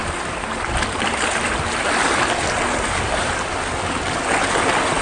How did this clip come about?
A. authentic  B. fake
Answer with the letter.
A